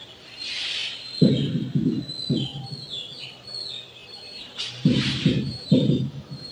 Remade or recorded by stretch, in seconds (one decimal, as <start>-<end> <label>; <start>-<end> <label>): 0.0-4.0 recorded; 4.0-6.5 remade